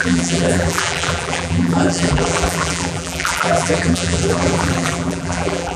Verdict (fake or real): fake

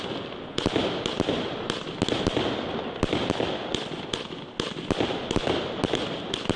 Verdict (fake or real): real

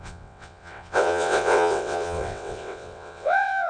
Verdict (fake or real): fake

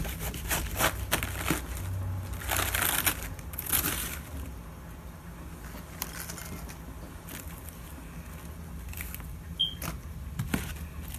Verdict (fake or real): real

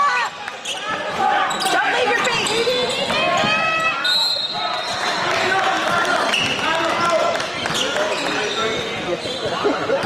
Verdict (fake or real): real